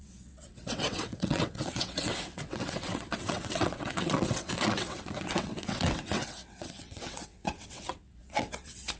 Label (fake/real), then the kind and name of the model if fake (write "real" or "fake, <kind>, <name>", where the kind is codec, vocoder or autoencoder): fake, vocoder, WaveNeXt